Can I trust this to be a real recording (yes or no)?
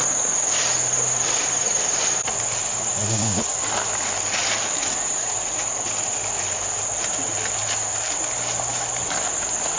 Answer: yes